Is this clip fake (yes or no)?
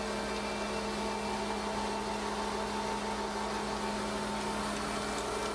no